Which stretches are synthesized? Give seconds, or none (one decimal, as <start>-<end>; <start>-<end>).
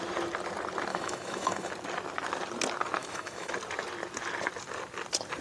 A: 0.9-1.7; 3.0-3.5